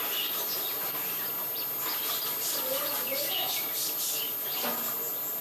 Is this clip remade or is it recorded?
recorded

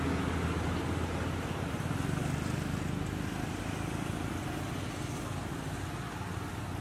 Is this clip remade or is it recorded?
recorded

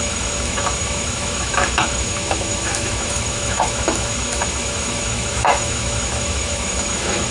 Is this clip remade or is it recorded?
remade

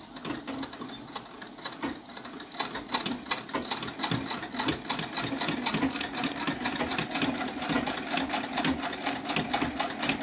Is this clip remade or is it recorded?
recorded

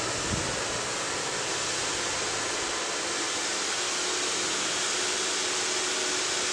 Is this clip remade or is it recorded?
recorded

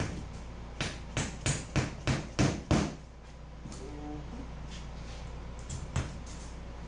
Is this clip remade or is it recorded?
recorded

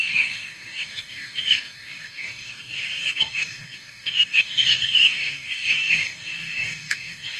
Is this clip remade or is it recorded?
remade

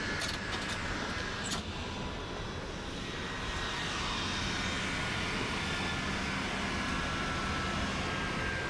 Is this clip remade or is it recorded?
recorded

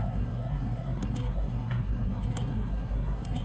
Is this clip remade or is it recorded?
remade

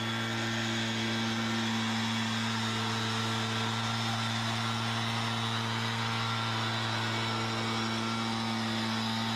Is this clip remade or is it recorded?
recorded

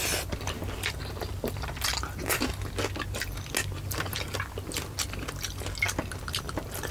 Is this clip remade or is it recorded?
recorded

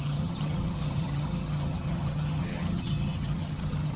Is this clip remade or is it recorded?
remade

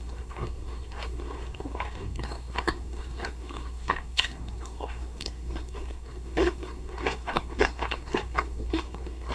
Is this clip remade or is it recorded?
remade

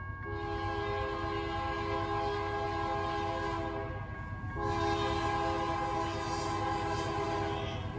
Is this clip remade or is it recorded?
recorded